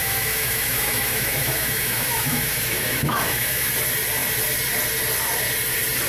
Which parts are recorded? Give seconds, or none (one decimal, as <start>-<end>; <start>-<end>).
3.7-6.1